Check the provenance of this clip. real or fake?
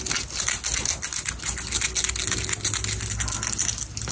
real